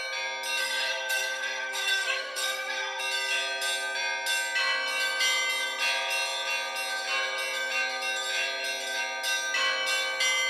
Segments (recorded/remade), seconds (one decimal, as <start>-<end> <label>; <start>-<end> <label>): 0.0-0.6 recorded; 0.6-3.0 remade; 3.0-10.5 recorded